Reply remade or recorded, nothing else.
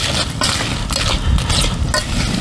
recorded